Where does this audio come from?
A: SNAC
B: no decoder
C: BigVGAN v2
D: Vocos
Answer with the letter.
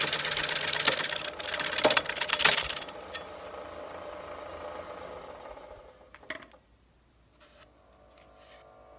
B